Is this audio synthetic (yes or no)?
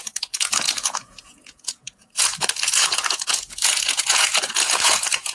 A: yes